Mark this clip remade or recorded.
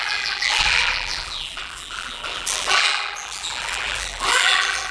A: remade